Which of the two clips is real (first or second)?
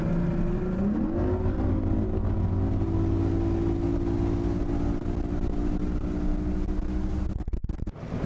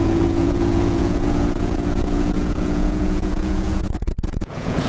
first